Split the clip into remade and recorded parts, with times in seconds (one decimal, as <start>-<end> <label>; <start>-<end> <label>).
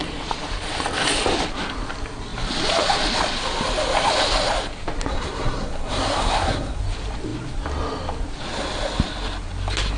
0.0-5.1 recorded; 5.1-6.8 remade; 6.8-10.0 recorded